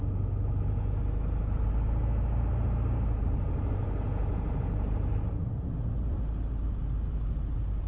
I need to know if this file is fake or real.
real